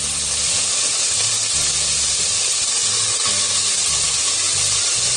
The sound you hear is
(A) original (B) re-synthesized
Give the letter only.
A